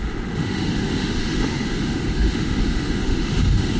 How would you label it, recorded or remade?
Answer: remade